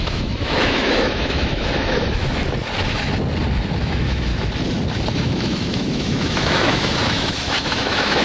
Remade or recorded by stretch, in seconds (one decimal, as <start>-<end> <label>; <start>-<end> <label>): 0.0-2.2 remade; 2.2-3.8 recorded; 3.8-4.3 remade; 4.3-5.1 recorded; 5.1-8.2 remade